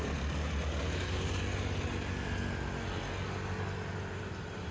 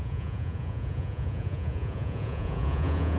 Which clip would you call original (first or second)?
first